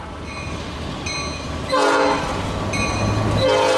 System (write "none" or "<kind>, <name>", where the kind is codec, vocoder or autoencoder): none